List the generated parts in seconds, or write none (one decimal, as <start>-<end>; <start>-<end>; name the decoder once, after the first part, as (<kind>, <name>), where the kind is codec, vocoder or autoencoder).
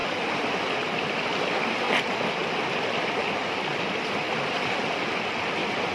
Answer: 0.0-0.5 (vocoder, BigVGAN v2); 2.4-5.9